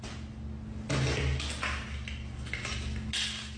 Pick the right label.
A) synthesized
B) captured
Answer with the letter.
B